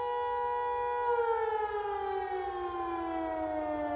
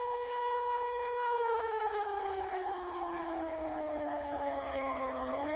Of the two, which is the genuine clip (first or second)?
first